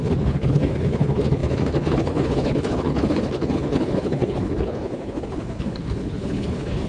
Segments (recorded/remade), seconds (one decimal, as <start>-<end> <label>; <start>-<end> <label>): 0.0-6.9 remade